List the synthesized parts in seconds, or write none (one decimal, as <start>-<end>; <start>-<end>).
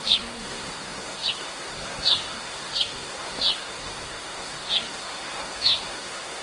0.0-6.4